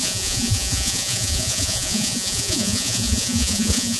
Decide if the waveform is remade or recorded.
remade